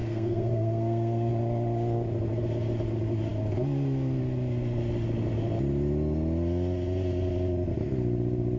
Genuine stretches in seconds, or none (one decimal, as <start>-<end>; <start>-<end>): 1.3-8.6